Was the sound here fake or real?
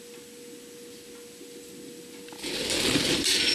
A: real